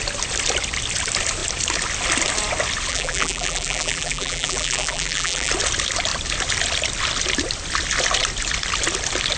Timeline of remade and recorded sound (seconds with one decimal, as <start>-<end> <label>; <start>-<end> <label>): 0.0-2.9 recorded; 2.9-5.5 remade; 5.5-9.4 recorded